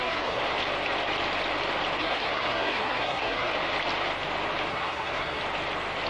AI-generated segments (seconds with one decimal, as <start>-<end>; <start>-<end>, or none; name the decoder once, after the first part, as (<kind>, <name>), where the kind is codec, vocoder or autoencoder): 0.0-0.4 (codec, SNAC); 2.0-3.5; 4.7-5.4